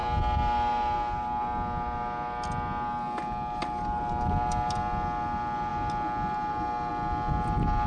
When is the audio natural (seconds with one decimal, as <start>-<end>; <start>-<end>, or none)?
0.0-7.9